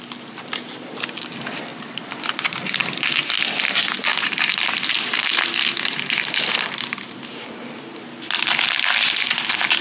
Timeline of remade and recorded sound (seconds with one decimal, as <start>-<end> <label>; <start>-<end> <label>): 0.0-1.7 recorded; 1.7-3.1 remade; 3.1-4.1 recorded; 4.1-4.8 remade; 4.8-9.8 recorded